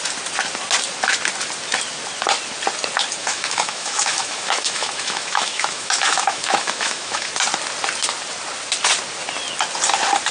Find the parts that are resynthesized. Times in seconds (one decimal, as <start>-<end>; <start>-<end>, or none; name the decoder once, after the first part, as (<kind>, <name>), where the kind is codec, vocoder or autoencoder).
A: 3.2-7.3 (autoencoder, DAC-VAE)